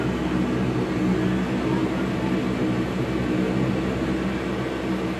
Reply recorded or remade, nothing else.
recorded